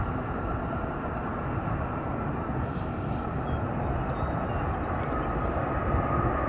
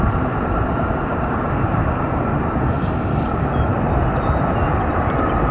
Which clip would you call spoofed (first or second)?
second